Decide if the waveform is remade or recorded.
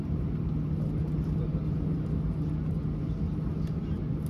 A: recorded